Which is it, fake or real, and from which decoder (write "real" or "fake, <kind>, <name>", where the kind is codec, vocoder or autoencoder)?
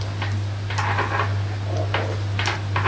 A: real